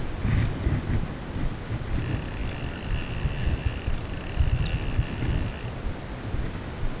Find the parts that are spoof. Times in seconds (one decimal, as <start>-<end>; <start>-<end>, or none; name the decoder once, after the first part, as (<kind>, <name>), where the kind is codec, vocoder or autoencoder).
none